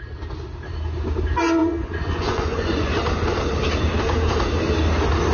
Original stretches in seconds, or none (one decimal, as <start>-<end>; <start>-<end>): 0.0-1.6; 2.9-5.3